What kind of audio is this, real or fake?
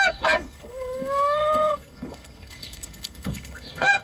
fake